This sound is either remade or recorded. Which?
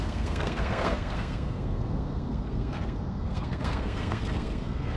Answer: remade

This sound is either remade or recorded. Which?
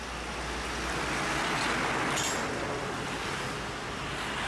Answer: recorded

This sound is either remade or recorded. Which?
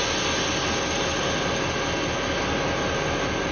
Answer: recorded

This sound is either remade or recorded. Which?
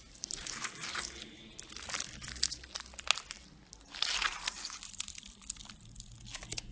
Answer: recorded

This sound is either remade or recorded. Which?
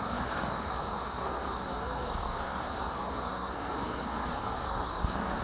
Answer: remade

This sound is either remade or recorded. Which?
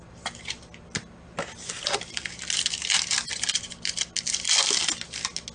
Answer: recorded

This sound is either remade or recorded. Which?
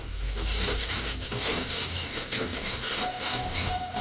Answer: remade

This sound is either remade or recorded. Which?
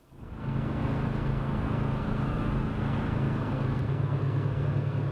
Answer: remade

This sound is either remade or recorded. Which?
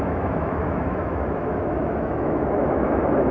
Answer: remade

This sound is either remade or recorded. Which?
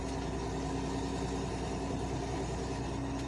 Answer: recorded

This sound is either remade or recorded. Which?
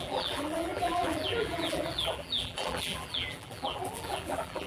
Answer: remade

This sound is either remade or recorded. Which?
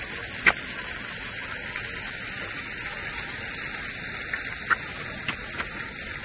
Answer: recorded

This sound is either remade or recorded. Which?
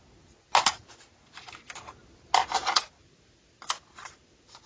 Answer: recorded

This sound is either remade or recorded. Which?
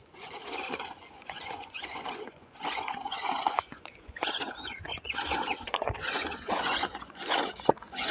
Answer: remade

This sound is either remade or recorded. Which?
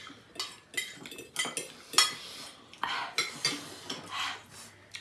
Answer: recorded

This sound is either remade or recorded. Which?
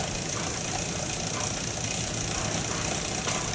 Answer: recorded